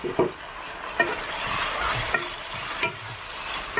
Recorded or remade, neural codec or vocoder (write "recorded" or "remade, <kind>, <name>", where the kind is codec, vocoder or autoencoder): recorded